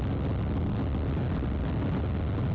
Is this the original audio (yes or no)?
yes